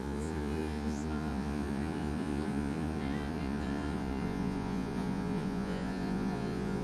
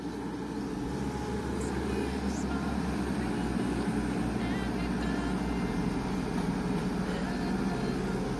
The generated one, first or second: first